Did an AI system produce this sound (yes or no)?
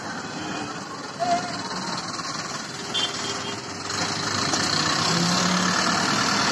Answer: no